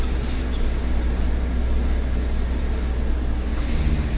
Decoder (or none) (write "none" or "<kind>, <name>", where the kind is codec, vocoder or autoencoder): none